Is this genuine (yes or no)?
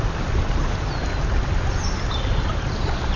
yes